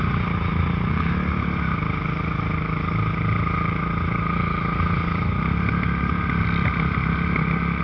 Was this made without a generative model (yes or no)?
yes